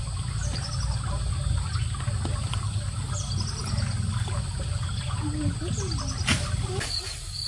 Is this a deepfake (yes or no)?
no